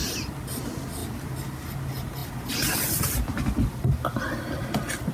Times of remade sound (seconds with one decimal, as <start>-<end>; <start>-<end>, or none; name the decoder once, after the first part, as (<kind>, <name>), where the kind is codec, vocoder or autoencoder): 0.0-0.6 (vocoder, BigVGAN v2); 1.0-1.8